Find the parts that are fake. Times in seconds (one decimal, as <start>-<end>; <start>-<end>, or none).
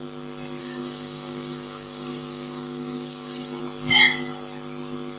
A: 0.6-3.6